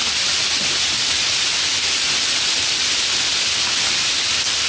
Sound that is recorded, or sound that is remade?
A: recorded